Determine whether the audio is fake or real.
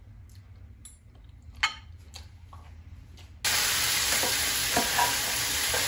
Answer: real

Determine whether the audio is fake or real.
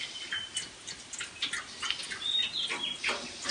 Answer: real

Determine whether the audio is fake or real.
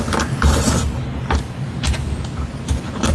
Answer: real